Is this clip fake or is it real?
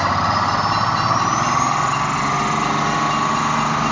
real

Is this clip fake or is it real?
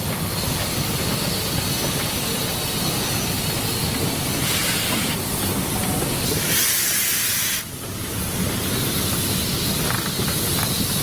real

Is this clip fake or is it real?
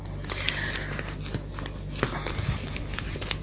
real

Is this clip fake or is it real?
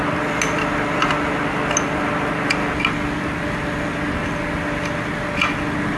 real